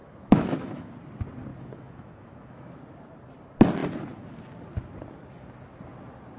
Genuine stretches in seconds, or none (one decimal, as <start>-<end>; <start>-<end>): 0.9-1.5; 2.7-6.4